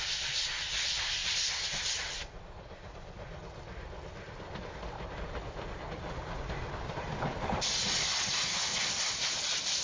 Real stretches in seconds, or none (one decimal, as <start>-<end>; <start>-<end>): 0.0-9.8